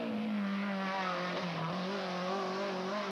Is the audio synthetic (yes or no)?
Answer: no